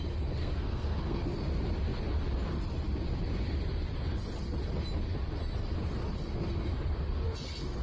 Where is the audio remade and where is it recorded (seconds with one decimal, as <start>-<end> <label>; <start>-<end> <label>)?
0.0-0.4 recorded; 0.4-1.2 remade; 1.2-7.8 recorded